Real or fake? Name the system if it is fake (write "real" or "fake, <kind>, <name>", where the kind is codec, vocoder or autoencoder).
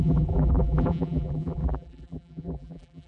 fake, vocoder, BigVGAN v2